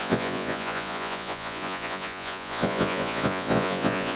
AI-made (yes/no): yes